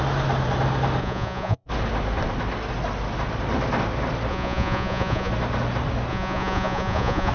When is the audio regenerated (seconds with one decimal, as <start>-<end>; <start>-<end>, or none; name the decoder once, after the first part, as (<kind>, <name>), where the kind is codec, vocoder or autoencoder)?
1.0-1.7 (vocoder, Vocos); 4.3-5.3; 6.1-7.3